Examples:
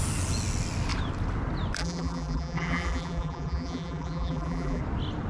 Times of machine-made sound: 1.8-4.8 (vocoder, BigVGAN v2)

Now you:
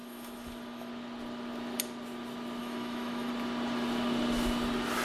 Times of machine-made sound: 0.0-0.9 (autoencoder, DAC-VAE); 2.6-3.3

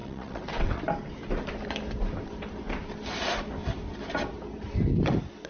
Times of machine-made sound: 0.0-0.8 (vocoder, WaveNeXt)

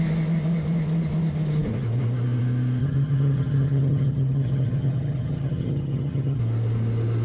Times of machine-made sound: 2.8-6.4 (vocoder, HiFi-GAN)

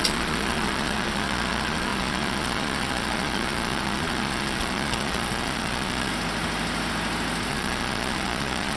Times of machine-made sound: 0.0-6.1 (vocoder, Vocos); 7.5-8.8

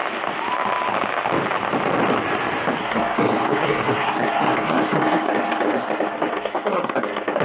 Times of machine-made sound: 2.8-7.4 (codec, SNAC)

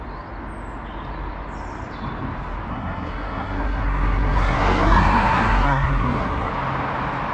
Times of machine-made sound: 2.7-6.5 (codec, SNAC)